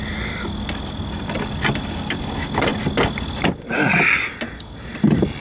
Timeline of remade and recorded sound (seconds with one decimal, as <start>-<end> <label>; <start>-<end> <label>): 0.0-5.4 recorded